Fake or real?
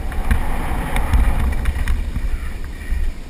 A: real